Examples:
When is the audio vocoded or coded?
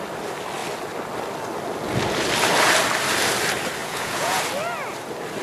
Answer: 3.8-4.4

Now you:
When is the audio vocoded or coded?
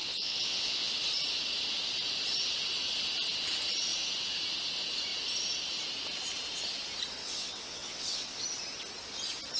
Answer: 0.0-0.9; 7.2-8.4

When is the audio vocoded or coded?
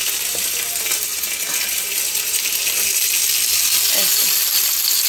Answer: none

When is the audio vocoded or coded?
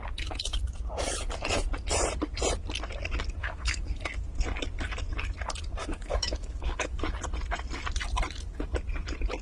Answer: 3.4-4.0; 5.8-7.0